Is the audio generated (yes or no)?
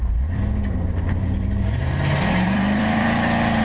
yes